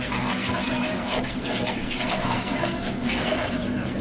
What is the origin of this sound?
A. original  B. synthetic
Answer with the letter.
B